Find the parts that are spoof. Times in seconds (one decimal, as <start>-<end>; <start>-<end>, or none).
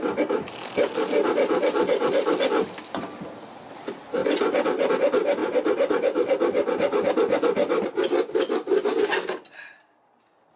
none